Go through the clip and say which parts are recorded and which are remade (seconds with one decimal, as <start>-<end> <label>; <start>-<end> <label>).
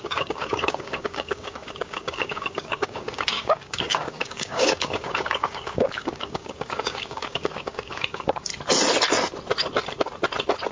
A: 0.0-8.5 remade; 8.5-10.7 recorded